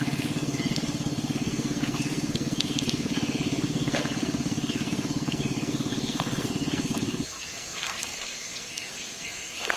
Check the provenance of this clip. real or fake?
fake